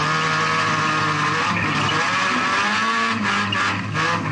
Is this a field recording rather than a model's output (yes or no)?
yes